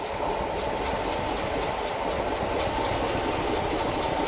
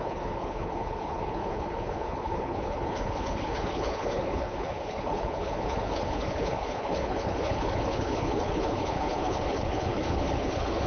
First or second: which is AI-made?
second